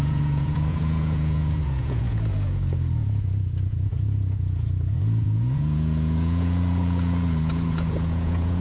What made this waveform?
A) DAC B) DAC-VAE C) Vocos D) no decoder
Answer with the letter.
C